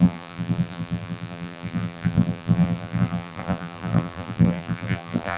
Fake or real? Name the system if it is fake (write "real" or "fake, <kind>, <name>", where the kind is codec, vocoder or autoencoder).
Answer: fake, vocoder, BigVGAN v2